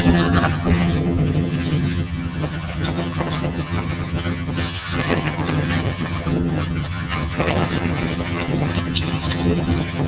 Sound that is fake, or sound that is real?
fake